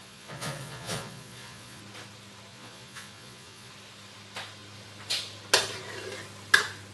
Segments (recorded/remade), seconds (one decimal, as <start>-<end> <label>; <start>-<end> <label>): 0.0-1.8 remade; 1.8-2.5 recorded; 2.5-3.7 remade; 3.7-6.9 recorded